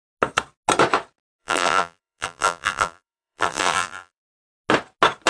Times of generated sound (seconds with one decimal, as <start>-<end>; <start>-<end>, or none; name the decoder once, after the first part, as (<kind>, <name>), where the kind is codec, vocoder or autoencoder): 1.4-4.2 (vocoder, BigVGAN v2)